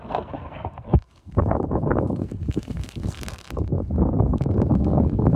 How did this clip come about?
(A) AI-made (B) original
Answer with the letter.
A